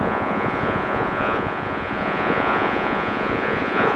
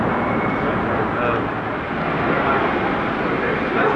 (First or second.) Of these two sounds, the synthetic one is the first